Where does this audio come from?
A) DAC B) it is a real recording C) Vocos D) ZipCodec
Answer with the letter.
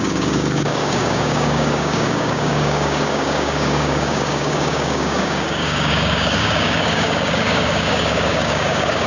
A